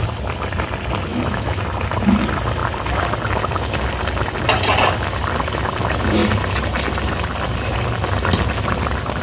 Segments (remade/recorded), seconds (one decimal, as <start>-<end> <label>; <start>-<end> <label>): 0.0-1.1 recorded; 1.1-1.6 remade; 1.6-9.2 recorded